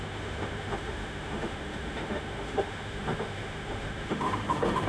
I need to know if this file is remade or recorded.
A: remade